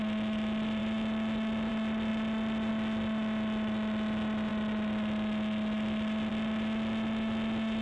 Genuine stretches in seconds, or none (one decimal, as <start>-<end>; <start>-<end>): 0.0-7.8